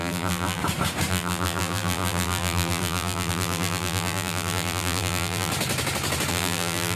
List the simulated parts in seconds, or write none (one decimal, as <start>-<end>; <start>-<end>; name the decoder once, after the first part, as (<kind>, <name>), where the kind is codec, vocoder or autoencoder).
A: 0.0-0.6 (vocoder, BigVGAN v2); 1.1-5.5; 6.3-7.0